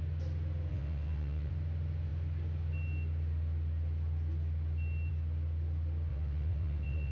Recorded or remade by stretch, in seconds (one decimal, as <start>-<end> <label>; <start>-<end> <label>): 0.0-0.7 recorded; 0.7-1.5 remade; 1.5-6.1 recorded; 6.1-7.1 remade